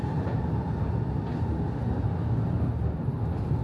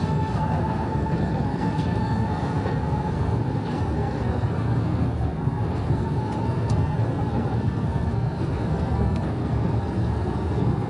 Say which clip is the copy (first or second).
second